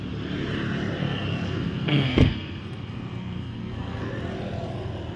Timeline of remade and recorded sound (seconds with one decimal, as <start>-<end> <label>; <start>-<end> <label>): 0.0-1.0 recorded; 1.0-4.1 remade; 4.1-5.2 recorded